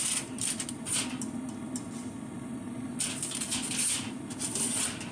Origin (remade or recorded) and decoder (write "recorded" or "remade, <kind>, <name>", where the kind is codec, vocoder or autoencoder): recorded